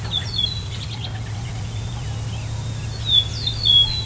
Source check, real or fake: real